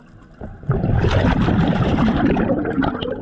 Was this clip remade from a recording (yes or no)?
yes